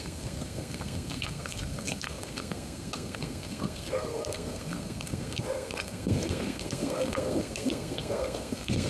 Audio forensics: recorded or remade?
remade